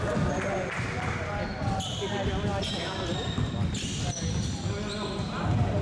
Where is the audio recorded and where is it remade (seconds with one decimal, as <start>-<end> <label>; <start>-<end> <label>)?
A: 0.0-5.8 recorded